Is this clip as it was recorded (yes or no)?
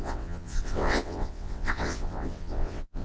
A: no